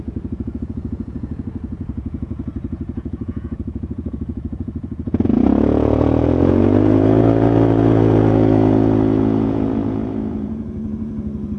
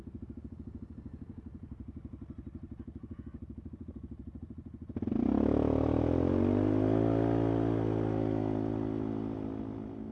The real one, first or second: second